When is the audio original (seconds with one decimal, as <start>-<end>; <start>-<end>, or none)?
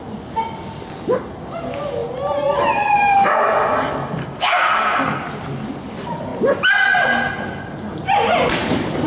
0.0-4.2; 5.2-9.1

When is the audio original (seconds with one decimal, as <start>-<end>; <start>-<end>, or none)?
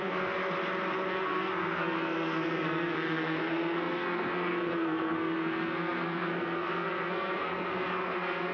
0.4-1.1